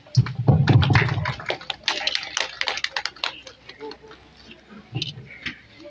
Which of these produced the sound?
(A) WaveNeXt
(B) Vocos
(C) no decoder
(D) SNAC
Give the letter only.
C